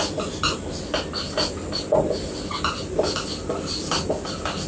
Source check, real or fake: real